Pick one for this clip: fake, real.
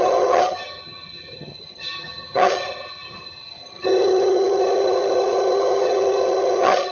fake